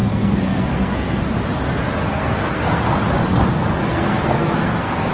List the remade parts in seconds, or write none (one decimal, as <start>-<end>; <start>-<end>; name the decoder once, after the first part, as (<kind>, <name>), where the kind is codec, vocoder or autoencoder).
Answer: 0.0-1.2 (codec, SNAC); 2.0-2.9; 3.9-5.1